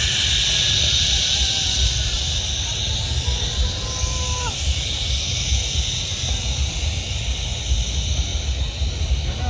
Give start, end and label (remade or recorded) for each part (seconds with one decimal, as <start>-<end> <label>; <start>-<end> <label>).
0.0-9.5 recorded